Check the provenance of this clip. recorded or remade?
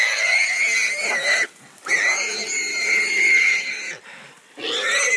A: recorded